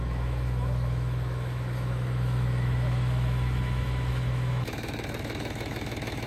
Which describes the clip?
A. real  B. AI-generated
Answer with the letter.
B